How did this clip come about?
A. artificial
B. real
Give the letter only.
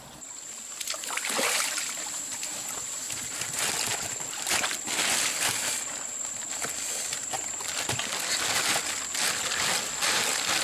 A